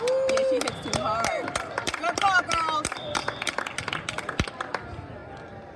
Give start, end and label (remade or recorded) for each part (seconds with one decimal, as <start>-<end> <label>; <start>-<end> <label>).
0.0-5.8 recorded